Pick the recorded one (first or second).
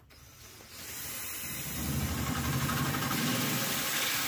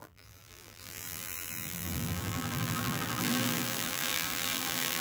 first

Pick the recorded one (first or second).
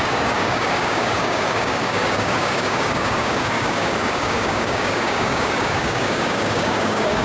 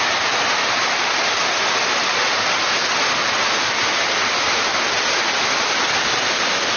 second